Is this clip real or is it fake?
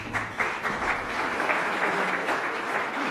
fake